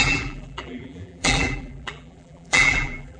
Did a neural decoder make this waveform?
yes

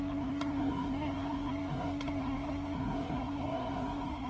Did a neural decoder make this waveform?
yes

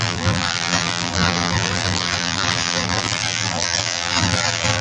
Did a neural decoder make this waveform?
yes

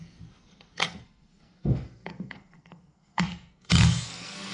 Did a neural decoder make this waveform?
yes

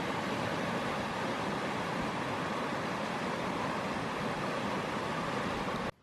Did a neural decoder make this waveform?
no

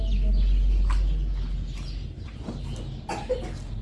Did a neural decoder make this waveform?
no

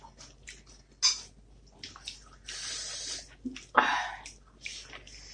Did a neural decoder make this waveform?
no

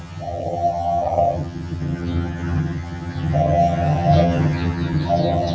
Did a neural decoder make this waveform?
yes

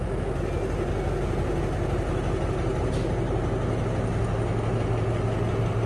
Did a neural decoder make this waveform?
no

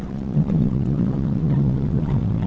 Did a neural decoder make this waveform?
yes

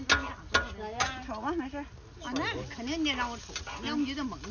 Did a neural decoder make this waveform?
no